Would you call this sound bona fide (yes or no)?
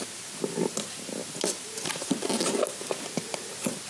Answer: yes